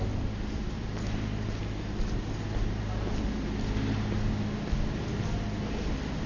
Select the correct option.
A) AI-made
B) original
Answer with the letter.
B